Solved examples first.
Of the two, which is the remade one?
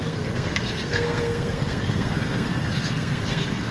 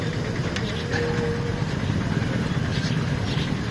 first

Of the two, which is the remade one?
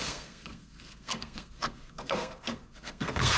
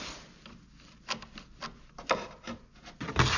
first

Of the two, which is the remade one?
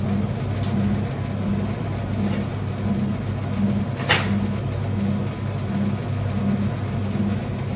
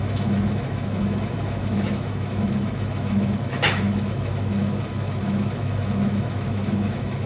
second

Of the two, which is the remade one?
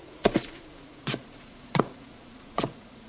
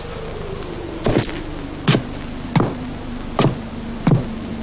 first